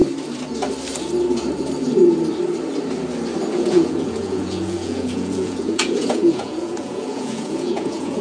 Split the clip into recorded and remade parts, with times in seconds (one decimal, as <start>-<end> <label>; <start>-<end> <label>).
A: 0.0-3.5 recorded; 3.5-8.2 remade

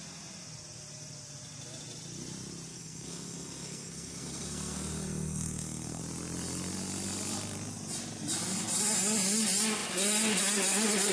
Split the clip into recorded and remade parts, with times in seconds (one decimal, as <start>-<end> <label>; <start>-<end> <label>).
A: 0.0-2.7 recorded; 2.7-6.0 remade; 6.0-11.1 recorded

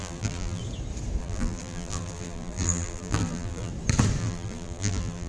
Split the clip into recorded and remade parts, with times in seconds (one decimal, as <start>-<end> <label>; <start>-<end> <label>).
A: 0.0-0.6 remade; 0.6-1.2 recorded; 1.2-3.7 remade; 3.7-4.2 recorded; 4.2-5.3 remade

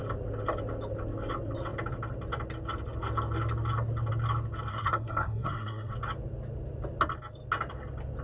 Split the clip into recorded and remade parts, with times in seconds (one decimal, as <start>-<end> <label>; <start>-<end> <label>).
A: 0.0-4.7 recorded; 4.7-5.9 remade; 5.9-8.2 recorded

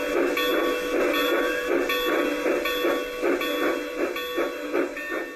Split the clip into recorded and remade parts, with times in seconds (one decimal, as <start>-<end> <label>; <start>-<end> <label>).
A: 0.0-5.4 recorded